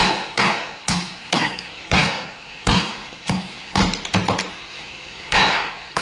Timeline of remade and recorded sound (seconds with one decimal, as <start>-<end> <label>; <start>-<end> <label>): 0.0-3.8 remade; 3.8-4.5 recorded; 4.5-6.0 remade